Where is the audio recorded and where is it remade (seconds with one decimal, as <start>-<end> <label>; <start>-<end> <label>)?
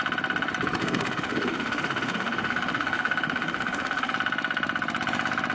0.0-0.8 recorded; 0.8-4.1 remade; 4.1-5.5 recorded